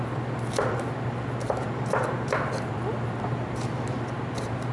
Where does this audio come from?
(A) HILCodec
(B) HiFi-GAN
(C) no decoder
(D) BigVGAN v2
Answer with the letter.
D